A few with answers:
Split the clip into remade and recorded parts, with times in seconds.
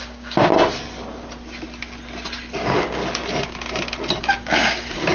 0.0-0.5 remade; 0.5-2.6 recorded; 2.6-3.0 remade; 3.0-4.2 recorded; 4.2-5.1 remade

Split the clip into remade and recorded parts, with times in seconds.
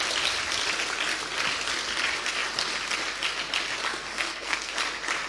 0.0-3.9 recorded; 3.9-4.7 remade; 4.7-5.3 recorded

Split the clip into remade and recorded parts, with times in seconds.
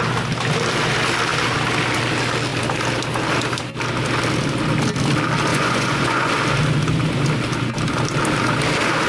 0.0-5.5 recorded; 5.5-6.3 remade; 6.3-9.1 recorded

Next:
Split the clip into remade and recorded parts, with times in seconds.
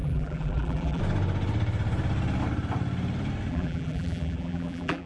0.0-1.0 remade; 1.0-3.5 recorded; 3.5-5.1 remade